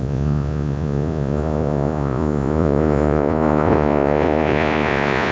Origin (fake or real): fake